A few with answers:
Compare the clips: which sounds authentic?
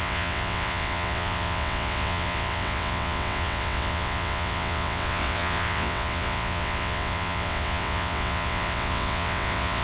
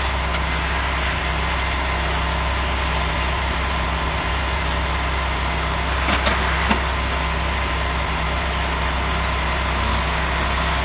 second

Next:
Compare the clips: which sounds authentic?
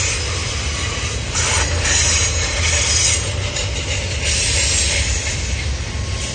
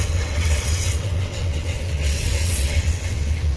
first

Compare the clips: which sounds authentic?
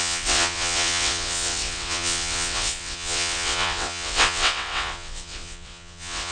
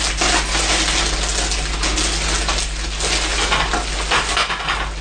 second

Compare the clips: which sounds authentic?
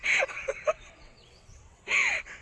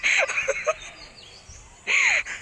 second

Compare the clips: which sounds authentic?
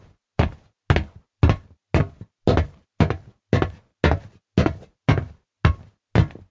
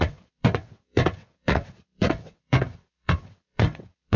first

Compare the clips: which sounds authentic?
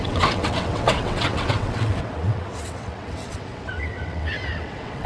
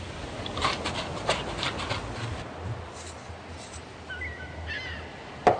second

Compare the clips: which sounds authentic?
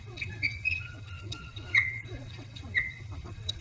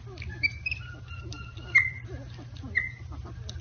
second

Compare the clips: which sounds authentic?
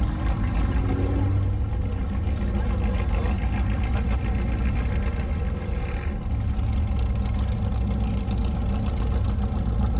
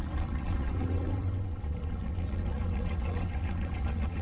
first